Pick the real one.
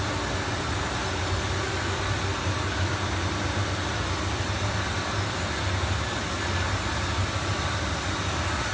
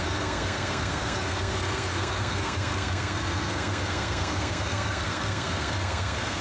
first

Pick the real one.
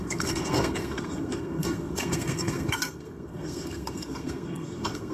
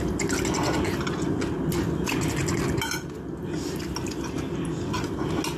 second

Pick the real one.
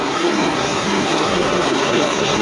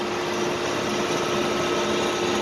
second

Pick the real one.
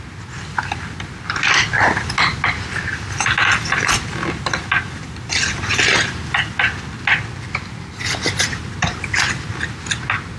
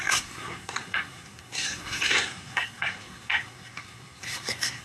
first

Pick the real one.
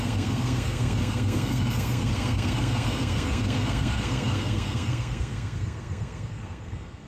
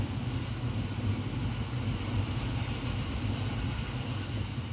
second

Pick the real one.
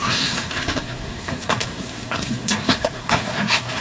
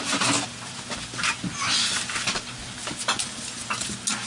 second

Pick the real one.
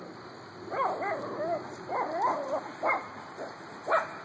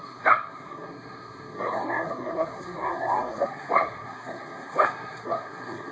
first